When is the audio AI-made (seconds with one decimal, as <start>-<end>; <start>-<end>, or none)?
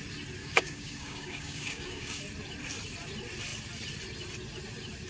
0.4-2.2